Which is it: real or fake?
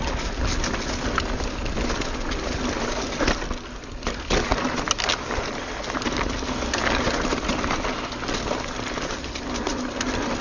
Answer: real